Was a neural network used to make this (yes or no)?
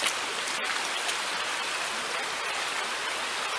no